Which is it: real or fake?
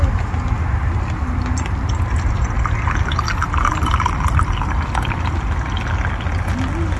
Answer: real